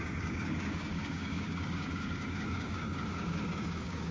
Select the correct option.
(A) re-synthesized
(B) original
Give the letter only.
A